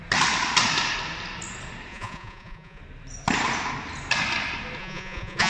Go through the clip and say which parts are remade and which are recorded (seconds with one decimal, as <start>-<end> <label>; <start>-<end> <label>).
0.0-1.9 recorded; 1.9-2.8 remade; 2.8-4.8 recorded; 4.8-5.5 remade